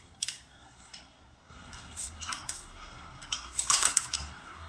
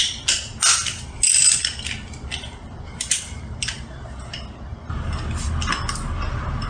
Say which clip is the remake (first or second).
first